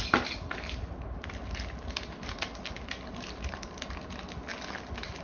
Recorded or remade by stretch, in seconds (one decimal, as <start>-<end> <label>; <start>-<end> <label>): 0.0-5.2 recorded

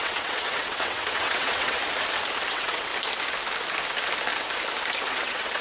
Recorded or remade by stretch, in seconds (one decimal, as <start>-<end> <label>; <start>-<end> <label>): 0.0-1.8 remade; 1.8-2.5 recorded; 2.5-2.9 remade; 2.9-5.1 recorded; 5.1-5.6 remade

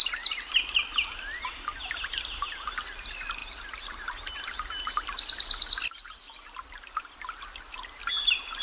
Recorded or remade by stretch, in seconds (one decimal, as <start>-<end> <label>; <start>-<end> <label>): 0.0-8.6 recorded